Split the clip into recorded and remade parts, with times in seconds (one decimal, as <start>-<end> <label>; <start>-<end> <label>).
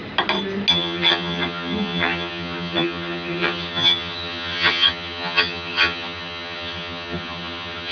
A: 0.0-0.7 recorded; 0.7-7.9 remade